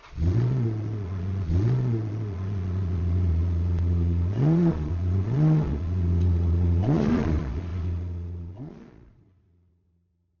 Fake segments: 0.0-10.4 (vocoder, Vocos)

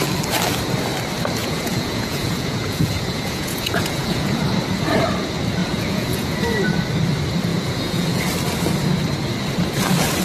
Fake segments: 1.4-4.4 (vocoder, Vocos); 5.6-6.4; 7.5-8.2

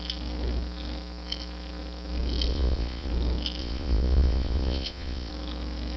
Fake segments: 2.5-3.1 (vocoder, Vocos); 3.6-5.3

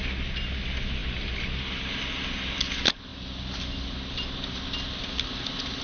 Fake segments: none

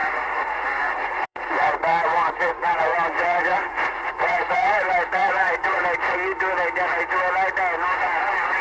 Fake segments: 0.0-5.8 (vocoder, Vocos); 8.0-8.6

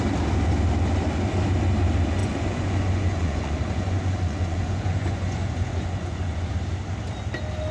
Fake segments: 2.2-6.5 (vocoder, Vocos)

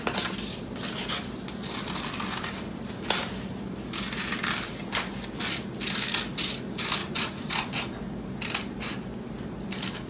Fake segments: 7.0-7.7 (vocoder, Vocos)